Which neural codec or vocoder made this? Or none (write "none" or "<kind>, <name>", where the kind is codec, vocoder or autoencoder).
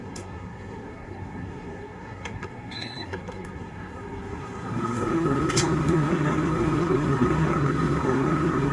codec, SNAC